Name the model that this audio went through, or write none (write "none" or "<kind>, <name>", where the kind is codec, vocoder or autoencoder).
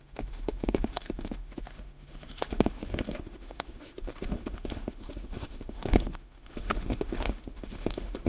autoencoder, DAC-VAE